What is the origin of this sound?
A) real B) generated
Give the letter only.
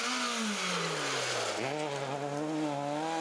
A